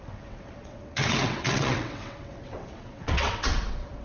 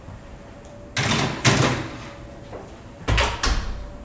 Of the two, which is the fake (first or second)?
first